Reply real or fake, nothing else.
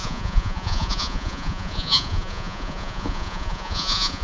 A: fake